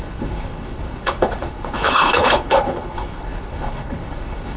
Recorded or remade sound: remade